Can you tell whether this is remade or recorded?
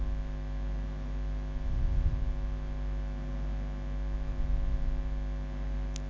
recorded